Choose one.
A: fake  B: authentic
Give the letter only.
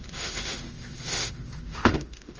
A